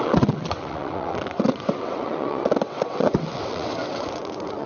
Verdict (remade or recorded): remade